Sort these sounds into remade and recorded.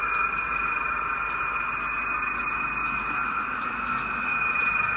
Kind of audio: recorded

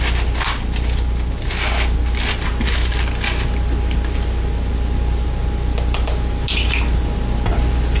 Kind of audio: recorded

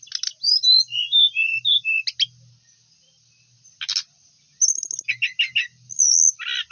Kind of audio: recorded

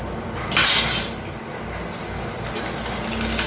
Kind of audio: recorded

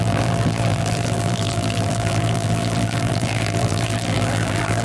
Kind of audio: remade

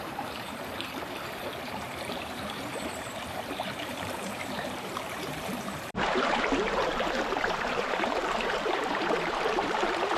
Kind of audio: remade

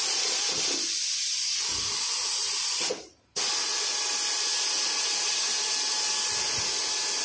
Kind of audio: recorded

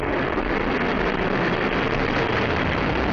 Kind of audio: recorded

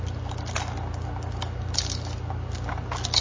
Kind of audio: recorded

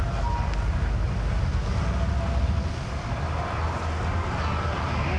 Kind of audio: recorded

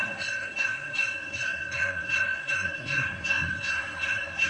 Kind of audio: remade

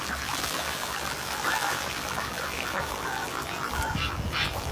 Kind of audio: remade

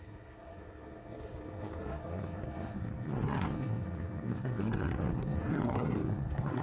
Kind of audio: remade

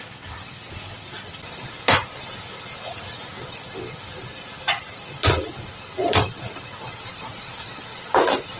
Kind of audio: recorded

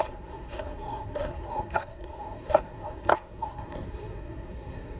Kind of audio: remade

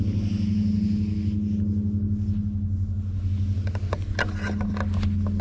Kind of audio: recorded